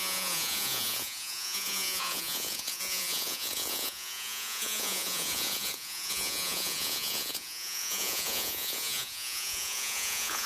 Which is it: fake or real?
fake